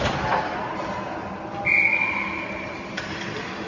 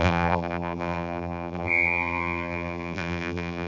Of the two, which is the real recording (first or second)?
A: first